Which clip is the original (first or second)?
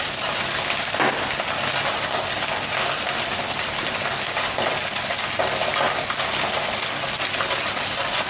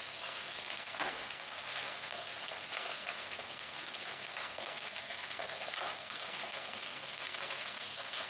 first